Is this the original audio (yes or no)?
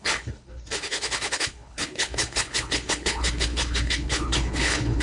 no